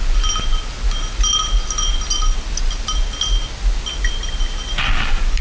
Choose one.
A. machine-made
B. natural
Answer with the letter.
B